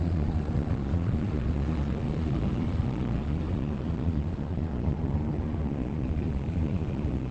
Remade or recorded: remade